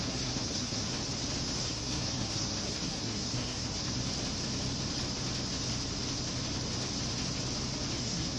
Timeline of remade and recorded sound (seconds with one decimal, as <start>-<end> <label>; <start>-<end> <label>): 0.0-0.9 remade; 0.9-1.6 recorded; 1.6-4.0 remade; 4.0-8.0 recorded; 8.0-8.4 remade